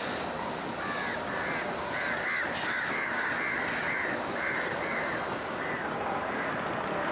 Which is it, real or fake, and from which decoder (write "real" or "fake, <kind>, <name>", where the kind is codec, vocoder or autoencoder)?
real